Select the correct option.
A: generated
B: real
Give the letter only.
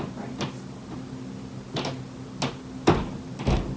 B